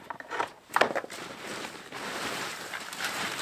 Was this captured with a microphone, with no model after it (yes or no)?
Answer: no